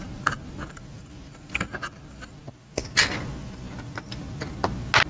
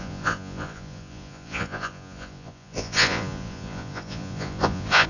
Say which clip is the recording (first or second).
first